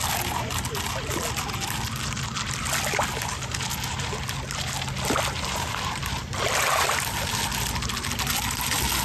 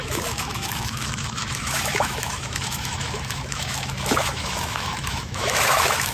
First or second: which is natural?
first